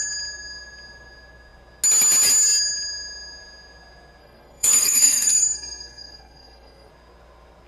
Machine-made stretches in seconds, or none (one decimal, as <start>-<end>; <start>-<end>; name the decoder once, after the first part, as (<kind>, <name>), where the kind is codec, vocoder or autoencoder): 4.2-6.9 (codec, SNAC)